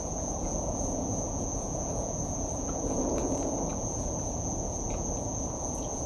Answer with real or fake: fake